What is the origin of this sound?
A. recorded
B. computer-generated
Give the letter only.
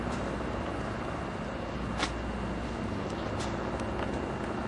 A